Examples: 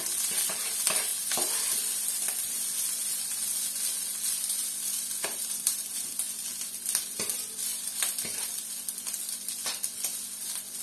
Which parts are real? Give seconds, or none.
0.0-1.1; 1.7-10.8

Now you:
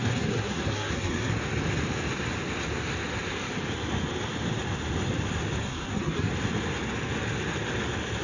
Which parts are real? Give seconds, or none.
1.3-5.6; 6.3-8.2

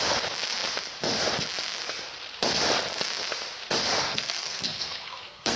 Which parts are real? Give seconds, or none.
0.0-4.0

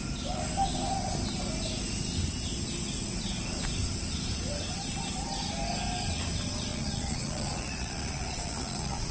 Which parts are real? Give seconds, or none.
0.0-6.7